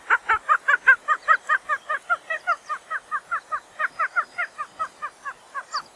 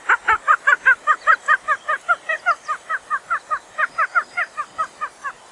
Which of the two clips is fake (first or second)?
second